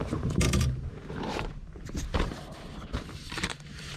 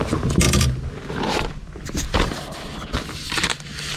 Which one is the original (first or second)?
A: second